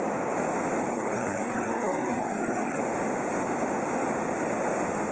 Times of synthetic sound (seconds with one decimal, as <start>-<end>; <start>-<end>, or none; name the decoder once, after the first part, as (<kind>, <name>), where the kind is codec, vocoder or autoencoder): 0.9-2.8 (codec, SNAC)